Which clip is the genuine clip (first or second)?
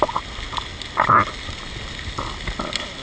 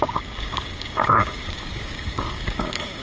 first